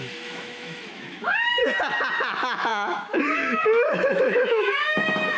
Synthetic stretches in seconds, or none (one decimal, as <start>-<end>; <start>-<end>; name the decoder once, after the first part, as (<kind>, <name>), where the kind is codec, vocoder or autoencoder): 0.0-1.6 (autoencoder, DAC-VAE); 2.1-5.4